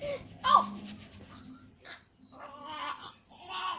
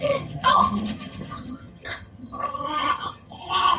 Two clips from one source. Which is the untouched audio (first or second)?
first